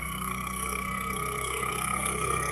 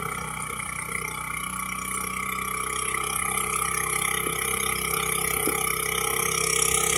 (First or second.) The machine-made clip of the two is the first